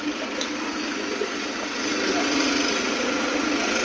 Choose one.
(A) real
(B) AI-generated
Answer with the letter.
B